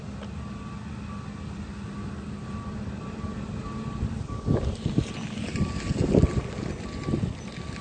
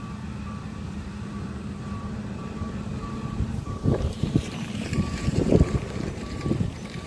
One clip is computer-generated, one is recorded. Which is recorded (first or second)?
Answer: first